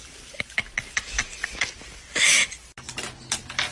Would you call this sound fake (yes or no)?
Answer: no